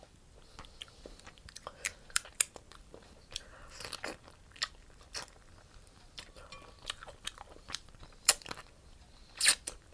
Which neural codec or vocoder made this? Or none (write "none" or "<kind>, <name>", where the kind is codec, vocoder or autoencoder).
vocoder, BigVGAN v2